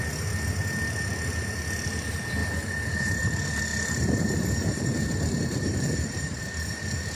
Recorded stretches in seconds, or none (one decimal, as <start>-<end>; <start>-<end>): 0.0-2.4; 3.3-3.7; 6.4-7.1

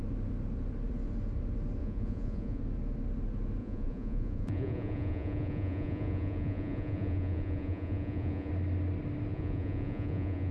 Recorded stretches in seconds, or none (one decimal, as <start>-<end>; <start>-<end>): 0.0-1.8; 2.6-3.6; 8.5-9.3

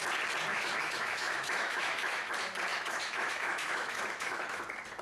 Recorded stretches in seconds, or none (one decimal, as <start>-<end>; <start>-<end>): 0.0-0.5; 2.3-2.7; 4.6-5.0

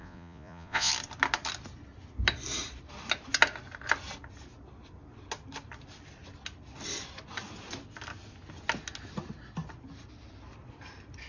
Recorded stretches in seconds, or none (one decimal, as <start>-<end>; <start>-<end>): 0.9-11.3

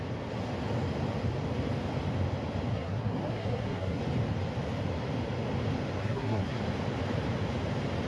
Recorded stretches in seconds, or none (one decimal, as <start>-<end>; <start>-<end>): 0.0-2.7; 4.0-6.0; 6.6-8.1

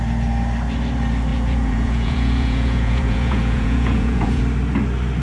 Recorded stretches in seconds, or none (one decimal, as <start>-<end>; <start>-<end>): 0.0-1.3; 4.4-5.2